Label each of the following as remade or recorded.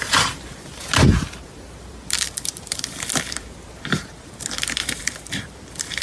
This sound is remade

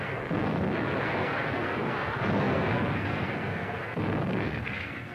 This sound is remade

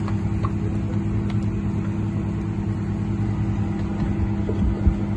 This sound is recorded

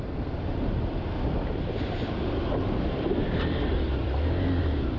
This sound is recorded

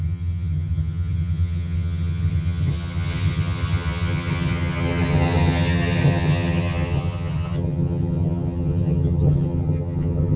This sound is remade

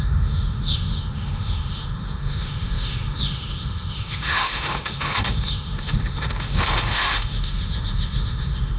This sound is remade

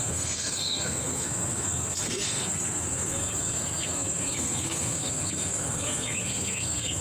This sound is remade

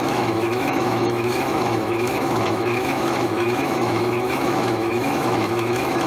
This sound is remade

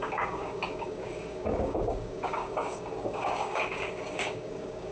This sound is remade